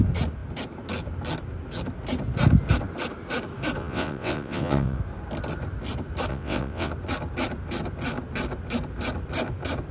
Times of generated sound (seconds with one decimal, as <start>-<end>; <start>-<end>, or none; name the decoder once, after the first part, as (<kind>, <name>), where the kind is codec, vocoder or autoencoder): 3.8-5.0 (vocoder, WaveNeXt); 6.3-6.9